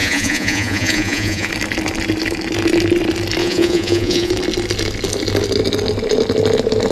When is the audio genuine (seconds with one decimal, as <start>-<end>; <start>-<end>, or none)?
1.5-3.4; 4.3-6.9